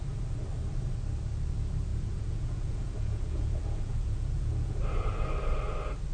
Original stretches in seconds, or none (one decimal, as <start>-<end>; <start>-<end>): 0.0-1.9; 4.8-6.1